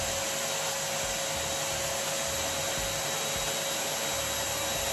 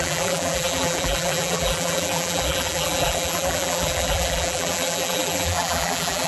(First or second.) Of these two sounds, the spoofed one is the second